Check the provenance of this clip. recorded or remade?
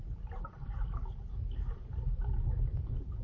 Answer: recorded